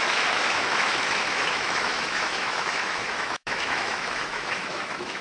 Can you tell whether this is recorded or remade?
remade